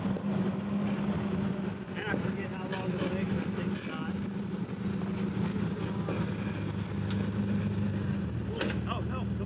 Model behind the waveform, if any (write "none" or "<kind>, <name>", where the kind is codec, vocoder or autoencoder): none